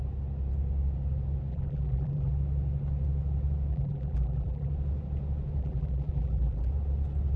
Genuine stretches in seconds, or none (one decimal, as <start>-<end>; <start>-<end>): 0.0-1.5; 2.3-3.7; 4.7-5.6; 6.7-7.4